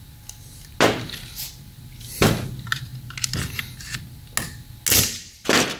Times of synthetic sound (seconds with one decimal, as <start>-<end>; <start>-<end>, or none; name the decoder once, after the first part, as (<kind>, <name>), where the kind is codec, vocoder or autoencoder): none